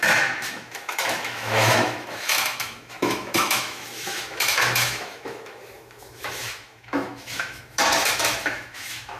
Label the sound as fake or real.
fake